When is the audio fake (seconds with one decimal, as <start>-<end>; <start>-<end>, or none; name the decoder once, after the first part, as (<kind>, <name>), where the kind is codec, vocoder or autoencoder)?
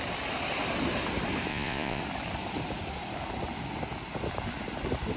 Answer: 1.5-2.0 (vocoder, Vocos)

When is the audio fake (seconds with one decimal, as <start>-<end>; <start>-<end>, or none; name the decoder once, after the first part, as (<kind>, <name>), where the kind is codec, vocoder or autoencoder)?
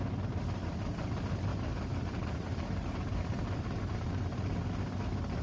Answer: 1.5-4.5 (vocoder, BigVGAN v2)